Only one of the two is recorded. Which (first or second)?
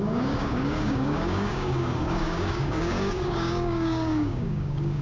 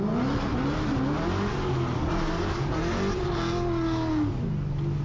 second